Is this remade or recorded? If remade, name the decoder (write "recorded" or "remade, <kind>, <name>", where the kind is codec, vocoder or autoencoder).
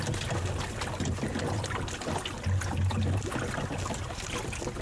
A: recorded